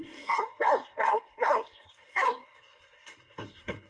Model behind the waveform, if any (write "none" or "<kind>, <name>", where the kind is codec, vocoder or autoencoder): codec, SNAC